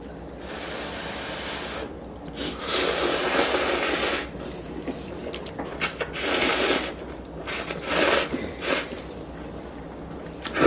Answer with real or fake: fake